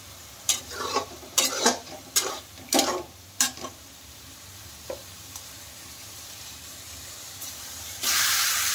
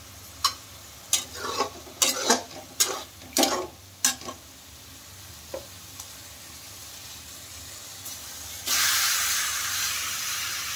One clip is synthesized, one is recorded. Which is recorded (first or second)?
second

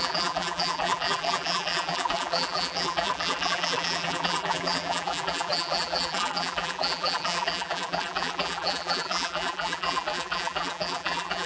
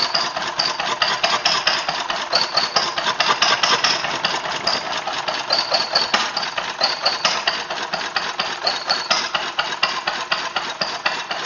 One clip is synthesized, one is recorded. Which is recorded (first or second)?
second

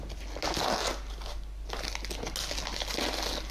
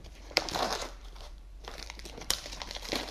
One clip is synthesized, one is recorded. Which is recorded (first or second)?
first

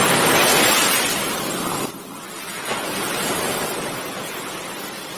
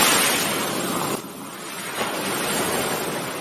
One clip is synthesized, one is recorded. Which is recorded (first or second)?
second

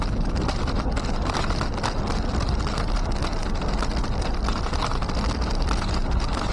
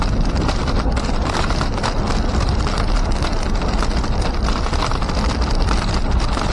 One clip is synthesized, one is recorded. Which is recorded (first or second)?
first